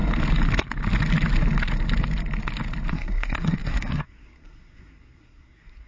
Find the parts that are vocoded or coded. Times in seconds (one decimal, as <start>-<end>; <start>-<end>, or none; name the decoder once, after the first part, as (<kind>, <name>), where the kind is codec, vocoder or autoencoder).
2.9-5.9 (codec, SNAC)